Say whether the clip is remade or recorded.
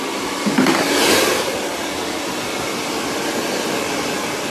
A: recorded